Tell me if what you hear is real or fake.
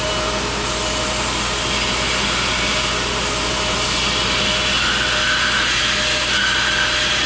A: real